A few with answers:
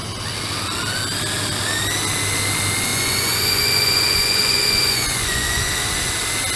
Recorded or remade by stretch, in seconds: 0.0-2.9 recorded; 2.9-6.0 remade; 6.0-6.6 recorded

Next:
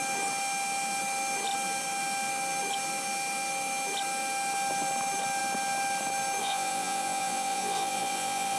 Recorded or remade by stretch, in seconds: 0.0-6.4 recorded; 6.4-8.6 remade